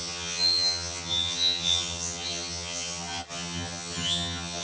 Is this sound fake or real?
fake